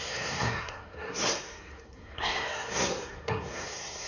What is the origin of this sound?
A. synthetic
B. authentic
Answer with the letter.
A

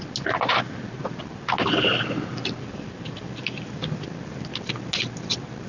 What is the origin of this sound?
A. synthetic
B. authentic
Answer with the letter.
B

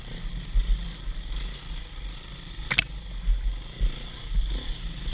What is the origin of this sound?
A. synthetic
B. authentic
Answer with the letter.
B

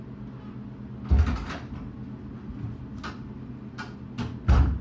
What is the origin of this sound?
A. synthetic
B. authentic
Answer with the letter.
B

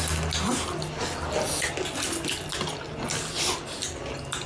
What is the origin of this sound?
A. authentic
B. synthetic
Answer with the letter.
A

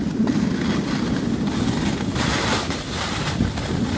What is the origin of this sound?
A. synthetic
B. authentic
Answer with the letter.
B